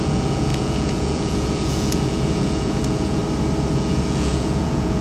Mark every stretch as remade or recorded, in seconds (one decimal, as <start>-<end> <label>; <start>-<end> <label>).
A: 0.0-3.2 remade; 3.2-3.7 recorded; 3.7-5.0 remade